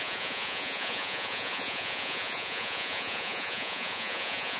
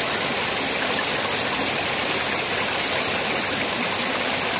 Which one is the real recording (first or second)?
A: second